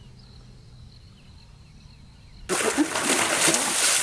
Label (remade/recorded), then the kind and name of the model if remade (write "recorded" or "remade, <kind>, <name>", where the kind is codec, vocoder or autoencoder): recorded